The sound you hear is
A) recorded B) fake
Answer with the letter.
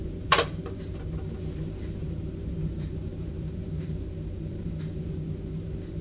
B